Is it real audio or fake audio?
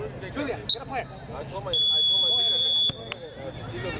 real